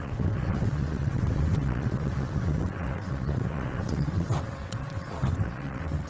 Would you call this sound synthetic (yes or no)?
yes